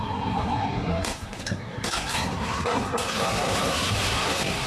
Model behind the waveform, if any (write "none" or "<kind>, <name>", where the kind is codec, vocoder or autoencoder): codec, SNAC